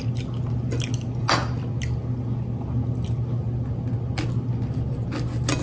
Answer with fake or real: real